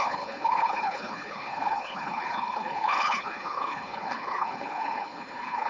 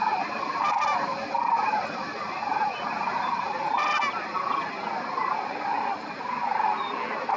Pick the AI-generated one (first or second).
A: first